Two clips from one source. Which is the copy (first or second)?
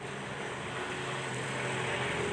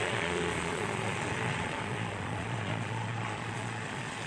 second